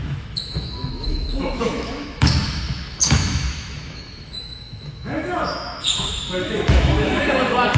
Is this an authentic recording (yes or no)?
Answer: no